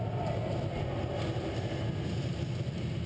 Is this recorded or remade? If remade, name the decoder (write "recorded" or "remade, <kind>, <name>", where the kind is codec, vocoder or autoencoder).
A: recorded